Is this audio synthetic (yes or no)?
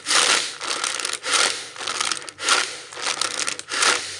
no